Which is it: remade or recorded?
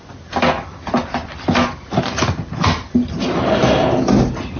recorded